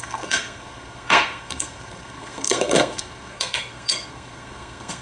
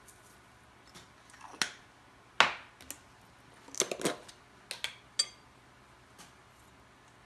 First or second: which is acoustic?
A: second